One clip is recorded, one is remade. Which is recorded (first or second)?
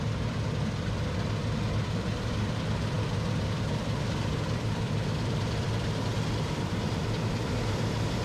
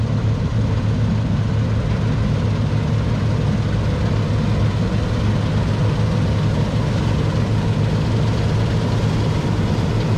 second